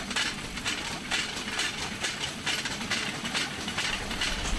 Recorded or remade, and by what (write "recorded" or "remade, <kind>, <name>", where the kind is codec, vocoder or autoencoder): recorded